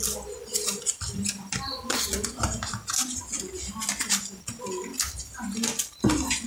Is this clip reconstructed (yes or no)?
no